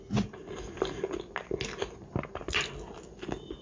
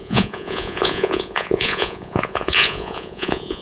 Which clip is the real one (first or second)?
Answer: first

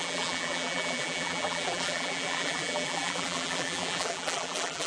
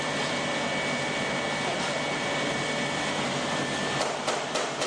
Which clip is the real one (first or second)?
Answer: second